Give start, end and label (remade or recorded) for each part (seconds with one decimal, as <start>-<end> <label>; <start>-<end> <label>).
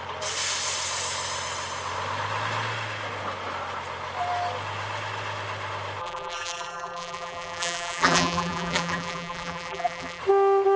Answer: 0.0-6.0 recorded; 6.0-10.2 remade; 10.2-10.8 recorded